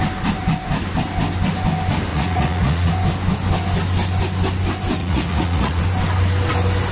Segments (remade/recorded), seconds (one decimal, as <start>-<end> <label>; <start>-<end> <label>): 0.0-2.1 recorded; 2.1-2.9 remade; 2.9-5.0 recorded; 5.0-5.8 remade; 5.8-6.9 recorded